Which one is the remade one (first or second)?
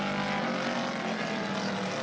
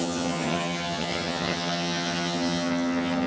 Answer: second